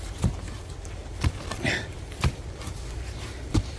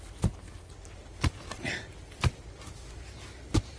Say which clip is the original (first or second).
second